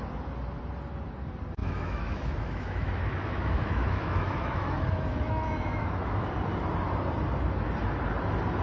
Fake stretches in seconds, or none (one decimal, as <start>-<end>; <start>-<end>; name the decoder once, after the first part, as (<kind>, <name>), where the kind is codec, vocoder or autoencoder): 1.6-6.3 (autoencoder, DAC-VAE)